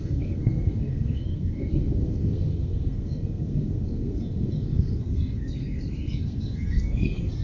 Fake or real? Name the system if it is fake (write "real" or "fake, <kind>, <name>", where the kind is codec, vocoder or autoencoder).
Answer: fake, codec, SNAC